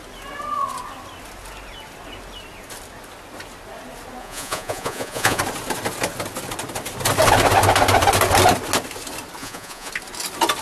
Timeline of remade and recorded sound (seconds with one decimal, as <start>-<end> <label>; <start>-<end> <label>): 0.0-4.2 recorded; 4.2-5.4 remade; 5.4-9.4 recorded; 9.4-9.9 remade; 9.9-10.6 recorded